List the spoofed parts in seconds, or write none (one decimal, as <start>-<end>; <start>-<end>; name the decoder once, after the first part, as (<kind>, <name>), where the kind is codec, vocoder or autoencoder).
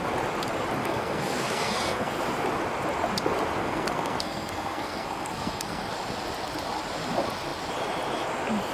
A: 0.8-2.2 (codec, SNAC); 3.6-5.9